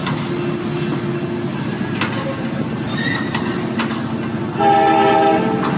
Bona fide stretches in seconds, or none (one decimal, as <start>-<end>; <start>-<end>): 0.0-1.5; 3.8-5.8